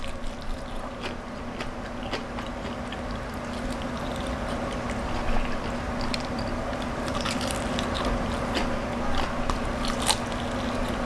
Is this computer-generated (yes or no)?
no